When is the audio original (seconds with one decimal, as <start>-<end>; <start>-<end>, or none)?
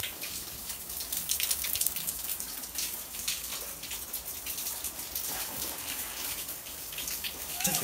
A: 3.5-5.3